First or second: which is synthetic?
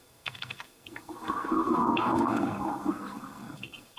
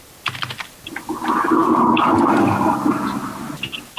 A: first